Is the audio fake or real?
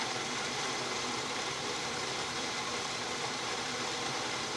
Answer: fake